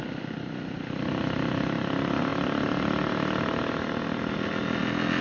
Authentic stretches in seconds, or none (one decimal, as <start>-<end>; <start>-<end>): 0.0-5.2